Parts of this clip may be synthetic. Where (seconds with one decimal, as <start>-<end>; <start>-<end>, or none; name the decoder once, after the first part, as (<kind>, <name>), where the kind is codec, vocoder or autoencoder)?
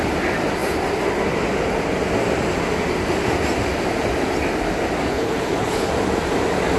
5.1-5.9 (codec, HILCodec)